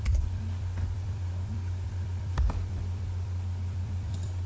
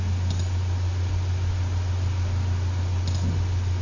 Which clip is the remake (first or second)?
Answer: first